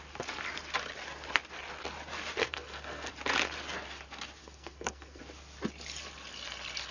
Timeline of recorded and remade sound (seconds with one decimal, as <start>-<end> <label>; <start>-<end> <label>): 0.0-2.4 recorded; 2.4-3.1 remade; 3.1-4.4 recorded; 4.4-5.2 remade; 5.2-6.9 recorded